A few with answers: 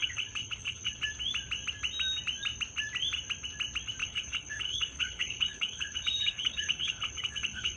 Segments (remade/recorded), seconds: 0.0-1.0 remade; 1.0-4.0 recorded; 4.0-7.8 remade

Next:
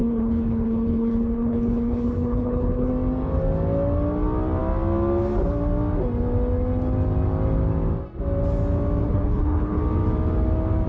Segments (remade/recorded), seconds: 0.0-2.9 remade; 2.9-9.0 recorded; 9.0-9.8 remade; 9.8-10.9 recorded

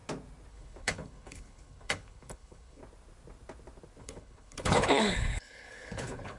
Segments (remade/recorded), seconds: 0.0-0.5 recorded; 0.5-2.8 remade; 2.8-4.0 recorded; 4.0-6.4 remade

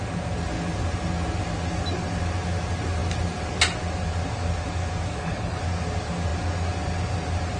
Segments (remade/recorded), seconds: 0.0-5.1 recorded; 5.1-5.6 remade; 5.6-7.6 recorded

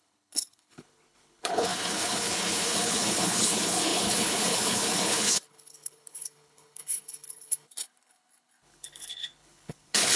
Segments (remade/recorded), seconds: 0.0-10.2 remade

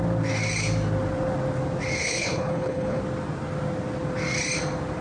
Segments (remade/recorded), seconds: 0.0-2.0 recorded; 2.0-3.0 remade; 3.0-5.0 recorded

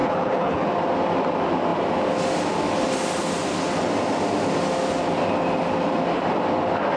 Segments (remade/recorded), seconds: 0.0-0.7 remade; 0.7-7.0 recorded